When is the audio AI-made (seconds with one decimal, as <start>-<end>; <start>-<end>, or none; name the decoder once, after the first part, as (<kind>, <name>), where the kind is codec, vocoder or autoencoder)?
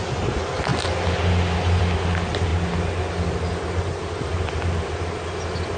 none